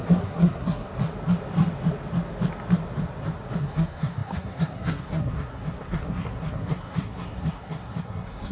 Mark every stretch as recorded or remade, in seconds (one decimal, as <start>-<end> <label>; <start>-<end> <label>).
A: 0.0-0.9 remade; 0.9-3.6 recorded; 3.6-8.5 remade